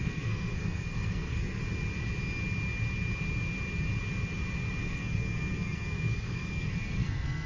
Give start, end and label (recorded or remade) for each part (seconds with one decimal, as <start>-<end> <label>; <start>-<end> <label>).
0.0-1.6 remade; 1.6-4.8 recorded; 4.8-7.5 remade

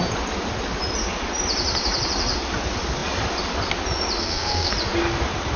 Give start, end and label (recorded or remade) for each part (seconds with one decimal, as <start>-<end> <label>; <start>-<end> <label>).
0.0-4.2 recorded; 4.2-4.7 remade; 4.7-5.6 recorded

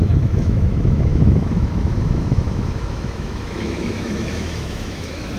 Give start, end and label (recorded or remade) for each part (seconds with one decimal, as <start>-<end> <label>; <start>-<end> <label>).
0.0-5.4 remade

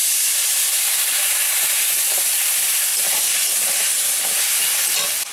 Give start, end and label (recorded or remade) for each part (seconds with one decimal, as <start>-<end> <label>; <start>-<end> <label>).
0.0-1.2 remade; 1.2-5.3 recorded

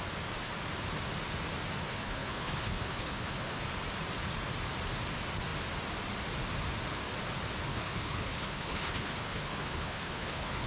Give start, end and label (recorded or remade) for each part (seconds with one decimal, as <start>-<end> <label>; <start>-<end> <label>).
0.0-1.8 recorded; 1.8-3.6 remade; 3.6-7.7 recorded; 7.7-10.7 remade